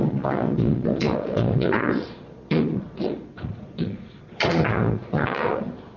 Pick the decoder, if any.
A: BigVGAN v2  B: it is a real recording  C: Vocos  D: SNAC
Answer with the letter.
C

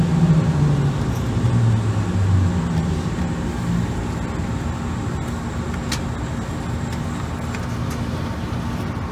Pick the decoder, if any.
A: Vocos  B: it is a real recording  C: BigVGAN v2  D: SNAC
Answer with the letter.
B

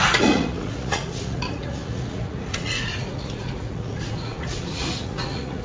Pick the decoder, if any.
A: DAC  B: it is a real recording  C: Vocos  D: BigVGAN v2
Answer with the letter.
C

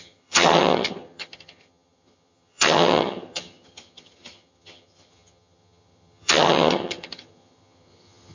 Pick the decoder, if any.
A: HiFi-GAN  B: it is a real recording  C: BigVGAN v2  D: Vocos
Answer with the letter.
A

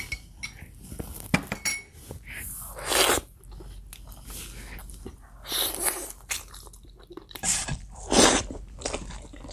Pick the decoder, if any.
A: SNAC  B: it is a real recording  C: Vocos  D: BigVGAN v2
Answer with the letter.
B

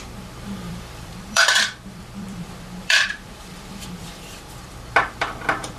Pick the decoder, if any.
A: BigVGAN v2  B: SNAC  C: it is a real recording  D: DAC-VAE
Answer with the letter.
A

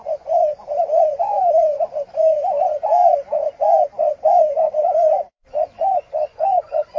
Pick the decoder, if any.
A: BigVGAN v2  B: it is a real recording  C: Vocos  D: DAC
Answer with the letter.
C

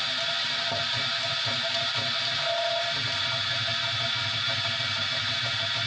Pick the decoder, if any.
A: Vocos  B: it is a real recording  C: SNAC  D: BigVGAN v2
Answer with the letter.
B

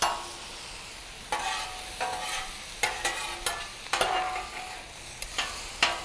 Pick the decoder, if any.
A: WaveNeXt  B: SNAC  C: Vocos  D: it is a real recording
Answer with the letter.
D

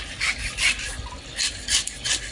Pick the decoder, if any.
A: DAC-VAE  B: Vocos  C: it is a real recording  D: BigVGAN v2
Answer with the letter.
C